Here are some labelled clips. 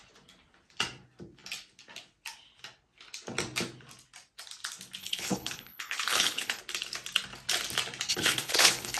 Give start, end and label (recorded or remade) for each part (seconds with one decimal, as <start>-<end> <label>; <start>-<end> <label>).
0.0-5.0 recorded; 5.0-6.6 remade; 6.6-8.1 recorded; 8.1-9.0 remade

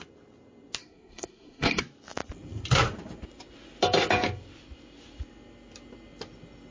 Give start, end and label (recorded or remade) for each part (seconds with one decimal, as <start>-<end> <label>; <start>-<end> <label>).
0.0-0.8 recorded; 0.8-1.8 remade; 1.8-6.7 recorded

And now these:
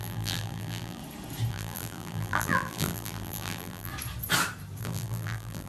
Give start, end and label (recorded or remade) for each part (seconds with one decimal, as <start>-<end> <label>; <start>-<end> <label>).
0.0-1.0 remade; 1.0-1.5 recorded; 1.5-3.9 remade; 3.9-4.8 recorded; 4.8-5.7 remade

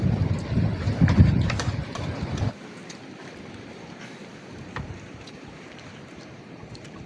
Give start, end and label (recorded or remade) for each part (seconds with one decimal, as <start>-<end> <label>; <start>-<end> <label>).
0.0-7.1 remade

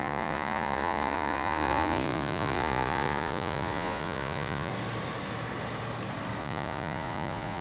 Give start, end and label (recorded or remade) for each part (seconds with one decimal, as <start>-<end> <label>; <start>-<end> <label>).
0.0-4.7 remade; 4.7-6.4 recorded; 6.4-7.6 remade